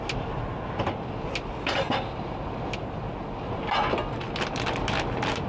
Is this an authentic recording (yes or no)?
yes